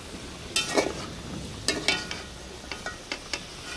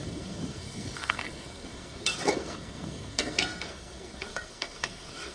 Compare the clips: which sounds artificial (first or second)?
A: second